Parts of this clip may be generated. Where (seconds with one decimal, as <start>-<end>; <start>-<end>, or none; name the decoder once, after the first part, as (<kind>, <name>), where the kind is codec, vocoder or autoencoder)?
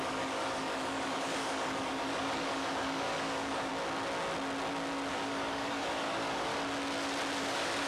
0.0-3.7 (codec, DAC); 5.1-6.5; 7.4-7.9